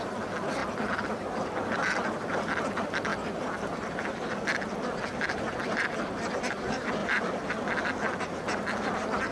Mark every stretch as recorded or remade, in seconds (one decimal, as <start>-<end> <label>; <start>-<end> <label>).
0.0-0.6 recorded; 0.6-2.7 remade; 2.7-3.1 recorded; 3.1-4.1 remade; 4.1-9.3 recorded